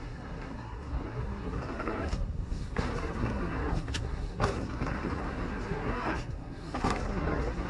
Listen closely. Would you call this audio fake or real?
fake